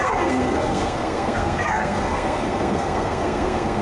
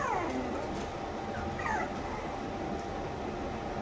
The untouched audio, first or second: second